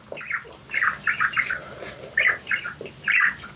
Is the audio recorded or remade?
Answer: recorded